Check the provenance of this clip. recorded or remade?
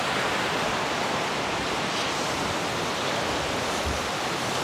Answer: recorded